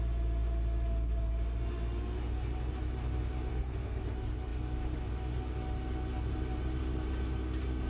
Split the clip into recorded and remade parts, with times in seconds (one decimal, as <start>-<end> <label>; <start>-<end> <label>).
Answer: 0.0-3.5 recorded; 3.5-4.0 remade; 4.0-7.9 recorded